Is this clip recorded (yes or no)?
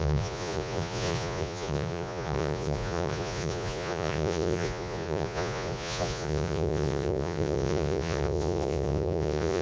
no